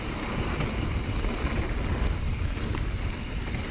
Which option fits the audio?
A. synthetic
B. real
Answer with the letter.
B